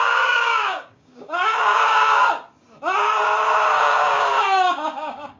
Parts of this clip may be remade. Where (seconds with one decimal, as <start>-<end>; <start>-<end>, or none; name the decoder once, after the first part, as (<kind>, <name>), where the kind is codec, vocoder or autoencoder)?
0.0-2.2 (codec, DAC); 3.8-5.4